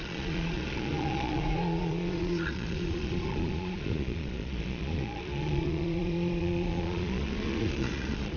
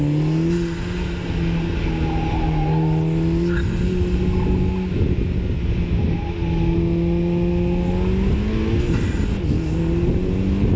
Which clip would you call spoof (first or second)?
first